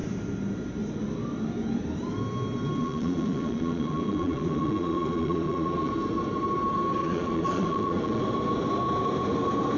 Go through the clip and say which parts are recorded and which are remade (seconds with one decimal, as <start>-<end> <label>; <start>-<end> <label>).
0.0-2.8 recorded; 2.8-5.9 remade; 5.9-7.0 recorded; 7.0-8.2 remade; 8.2-9.8 recorded

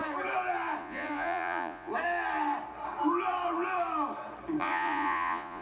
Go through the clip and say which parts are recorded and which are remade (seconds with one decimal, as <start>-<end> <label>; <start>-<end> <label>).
0.0-0.8 recorded; 0.8-1.9 remade; 1.9-4.6 recorded; 4.6-5.6 remade